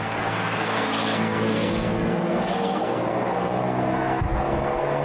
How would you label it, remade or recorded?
remade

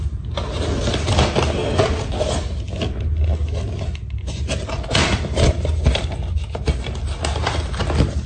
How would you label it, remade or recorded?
recorded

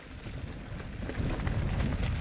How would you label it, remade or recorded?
recorded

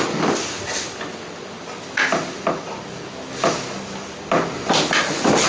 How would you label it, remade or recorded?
recorded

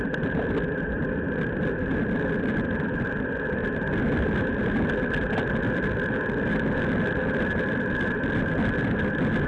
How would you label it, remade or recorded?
recorded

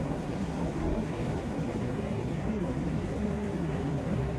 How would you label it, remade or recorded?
remade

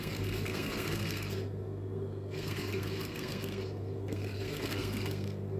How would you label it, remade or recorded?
remade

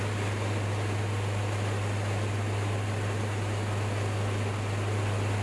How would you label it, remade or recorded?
recorded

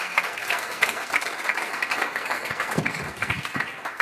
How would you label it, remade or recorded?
remade